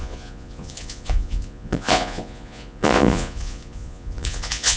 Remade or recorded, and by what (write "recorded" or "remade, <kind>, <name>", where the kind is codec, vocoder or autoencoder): remade, vocoder, Vocos